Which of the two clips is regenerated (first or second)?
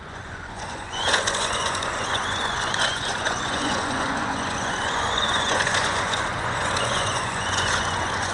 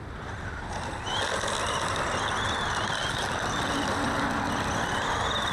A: first